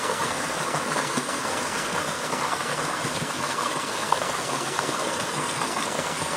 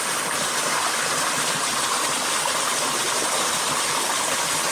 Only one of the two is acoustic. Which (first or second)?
second